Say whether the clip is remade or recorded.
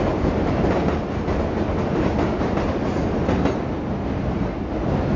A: recorded